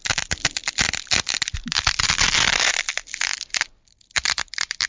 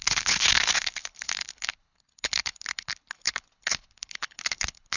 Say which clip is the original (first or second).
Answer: first